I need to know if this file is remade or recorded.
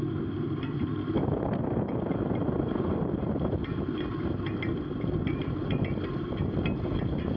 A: recorded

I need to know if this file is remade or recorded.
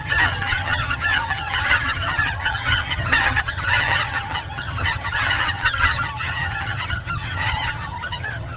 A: remade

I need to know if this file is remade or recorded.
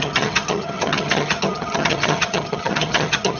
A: remade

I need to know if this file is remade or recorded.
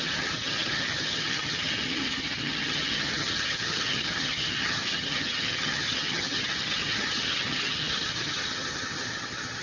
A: remade